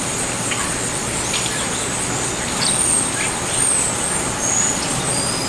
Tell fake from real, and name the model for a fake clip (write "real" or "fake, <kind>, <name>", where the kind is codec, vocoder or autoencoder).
real